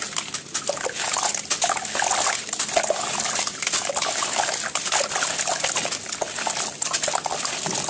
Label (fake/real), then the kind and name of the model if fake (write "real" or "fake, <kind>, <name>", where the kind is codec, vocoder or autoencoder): real